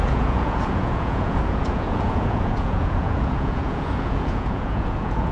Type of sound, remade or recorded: remade